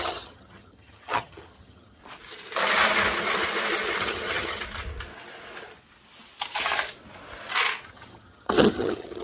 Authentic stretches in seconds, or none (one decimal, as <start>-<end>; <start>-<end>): 2.0-4.0; 4.6-7.9